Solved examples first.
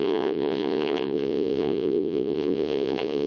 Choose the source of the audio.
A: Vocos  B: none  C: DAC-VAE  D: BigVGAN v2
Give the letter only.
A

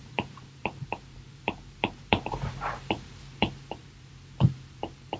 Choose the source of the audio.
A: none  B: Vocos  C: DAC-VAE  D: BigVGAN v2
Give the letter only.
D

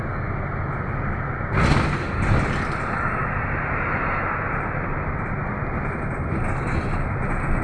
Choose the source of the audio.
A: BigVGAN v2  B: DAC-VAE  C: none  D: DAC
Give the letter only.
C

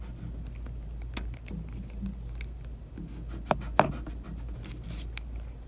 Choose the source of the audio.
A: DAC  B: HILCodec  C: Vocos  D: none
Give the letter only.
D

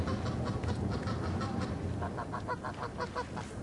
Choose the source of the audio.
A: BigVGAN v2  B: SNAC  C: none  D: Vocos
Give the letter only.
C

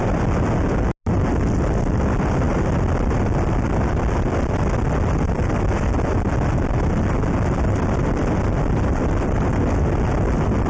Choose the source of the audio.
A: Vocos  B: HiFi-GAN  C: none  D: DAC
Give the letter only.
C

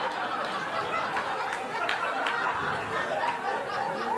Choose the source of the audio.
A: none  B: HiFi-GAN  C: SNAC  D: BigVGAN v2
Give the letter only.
A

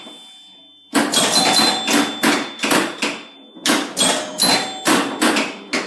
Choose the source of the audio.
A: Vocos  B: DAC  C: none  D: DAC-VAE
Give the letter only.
C